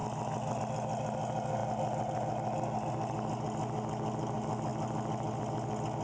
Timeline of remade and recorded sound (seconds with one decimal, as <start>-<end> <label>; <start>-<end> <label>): 0.0-6.0 recorded